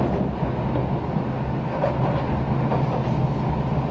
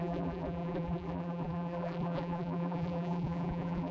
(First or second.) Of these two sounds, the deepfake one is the second